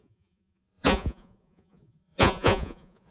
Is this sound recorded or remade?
remade